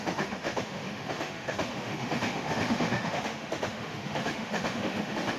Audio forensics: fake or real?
fake